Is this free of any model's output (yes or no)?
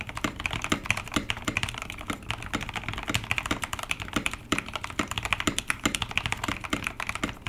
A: yes